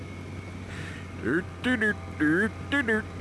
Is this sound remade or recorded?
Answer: recorded